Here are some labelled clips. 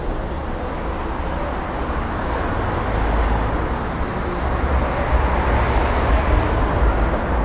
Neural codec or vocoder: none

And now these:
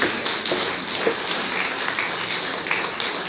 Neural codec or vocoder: none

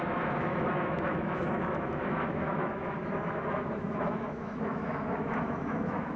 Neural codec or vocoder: autoencoder, DAC-VAE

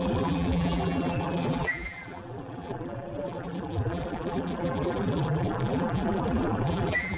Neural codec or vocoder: vocoder, BigVGAN v2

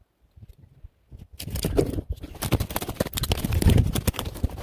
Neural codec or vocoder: none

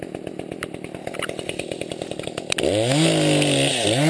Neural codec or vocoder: none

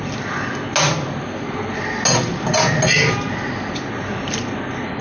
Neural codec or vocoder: none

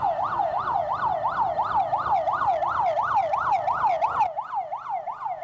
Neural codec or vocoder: none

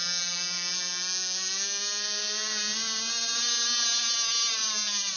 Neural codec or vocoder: none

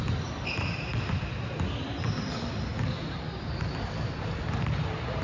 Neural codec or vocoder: none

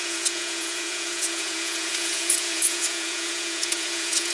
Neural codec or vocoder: vocoder, Vocos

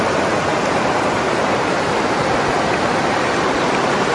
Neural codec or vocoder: vocoder, BigVGAN v2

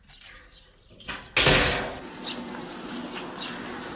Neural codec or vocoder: none